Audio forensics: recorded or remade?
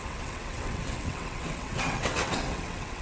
remade